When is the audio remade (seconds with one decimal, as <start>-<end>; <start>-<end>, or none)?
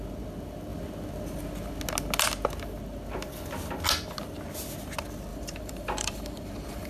5.3-6.9